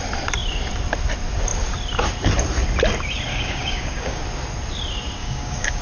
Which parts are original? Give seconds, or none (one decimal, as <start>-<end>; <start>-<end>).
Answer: 0.0-3.3; 4.2-5.2